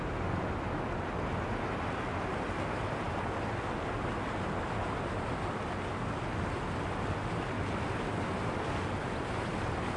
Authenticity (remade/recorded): recorded